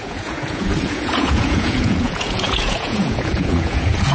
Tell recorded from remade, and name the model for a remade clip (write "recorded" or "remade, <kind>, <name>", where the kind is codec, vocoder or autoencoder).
remade, vocoder, Vocos